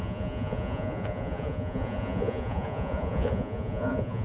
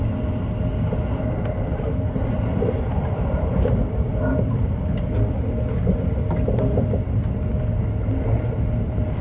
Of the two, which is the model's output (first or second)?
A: first